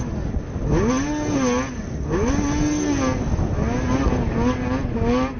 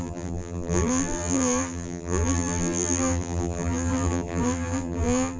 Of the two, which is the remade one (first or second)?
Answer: second